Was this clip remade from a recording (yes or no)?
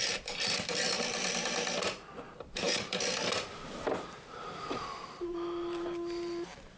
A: yes